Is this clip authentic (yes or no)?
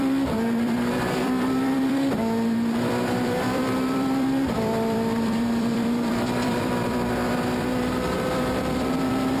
no